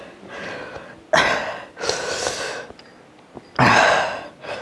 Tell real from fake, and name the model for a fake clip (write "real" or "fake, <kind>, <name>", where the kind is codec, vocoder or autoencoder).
real